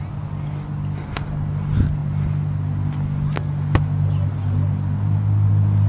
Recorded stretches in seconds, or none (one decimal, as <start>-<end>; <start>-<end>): 0.0-5.9